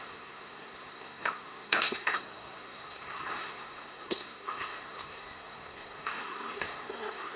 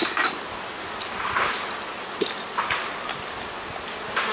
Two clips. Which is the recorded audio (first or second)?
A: second